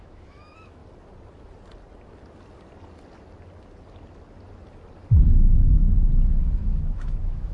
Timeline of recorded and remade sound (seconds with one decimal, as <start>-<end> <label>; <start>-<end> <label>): 0.0-0.8 remade; 0.8-5.2 recorded; 5.2-5.8 remade; 5.8-6.4 recorded; 6.4-7.5 remade